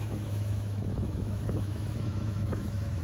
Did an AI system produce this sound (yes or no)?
yes